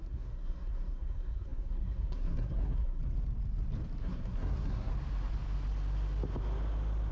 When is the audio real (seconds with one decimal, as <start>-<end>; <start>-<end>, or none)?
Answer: 3.0-4.0; 4.9-7.1